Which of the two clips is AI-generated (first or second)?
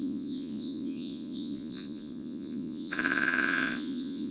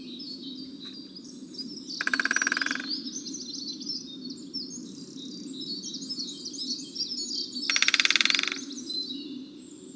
first